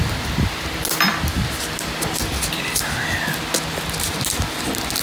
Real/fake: real